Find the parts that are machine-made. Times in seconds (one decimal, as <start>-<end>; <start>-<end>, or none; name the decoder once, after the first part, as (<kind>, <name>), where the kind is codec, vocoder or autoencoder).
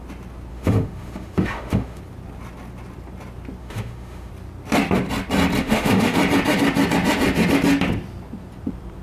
0.5-2.0 (autoencoder, DAC-VAE); 3.6-4.3; 5.6-6.2